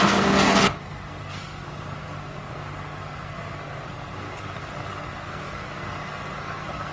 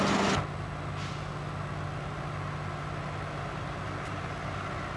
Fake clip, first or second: first